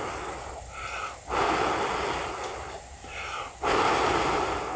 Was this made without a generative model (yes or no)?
yes